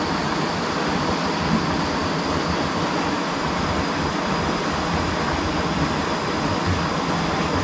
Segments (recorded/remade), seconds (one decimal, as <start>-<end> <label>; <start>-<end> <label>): 0.0-7.6 recorded